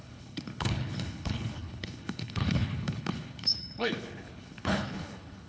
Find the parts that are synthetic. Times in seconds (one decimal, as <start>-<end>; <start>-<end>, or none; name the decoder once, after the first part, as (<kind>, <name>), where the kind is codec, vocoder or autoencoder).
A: 0.0-5.5 (codec, HILCodec)